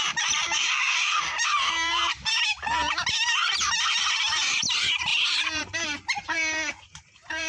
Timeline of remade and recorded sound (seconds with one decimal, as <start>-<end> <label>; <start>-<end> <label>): 0.0-2.0 remade; 2.0-3.4 recorded; 3.4-7.5 remade